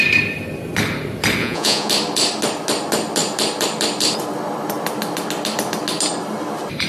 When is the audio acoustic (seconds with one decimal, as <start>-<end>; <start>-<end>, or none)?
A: 0.0-1.4; 1.9-6.9